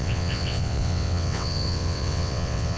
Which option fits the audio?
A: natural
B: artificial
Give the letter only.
B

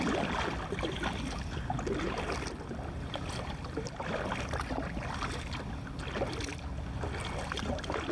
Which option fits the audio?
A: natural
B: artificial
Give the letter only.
A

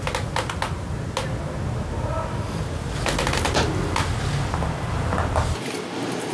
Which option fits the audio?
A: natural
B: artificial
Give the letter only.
A